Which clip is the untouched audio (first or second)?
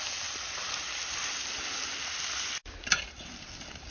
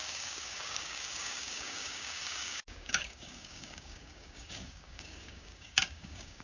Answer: first